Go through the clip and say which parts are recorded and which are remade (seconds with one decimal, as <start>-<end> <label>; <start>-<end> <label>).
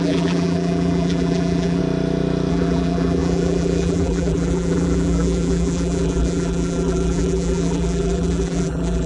0.0-1.8 remade; 1.8-2.5 recorded; 2.5-9.1 remade